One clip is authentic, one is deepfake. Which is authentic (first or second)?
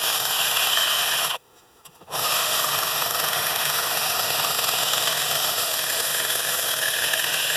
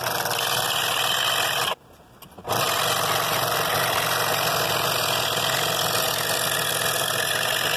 second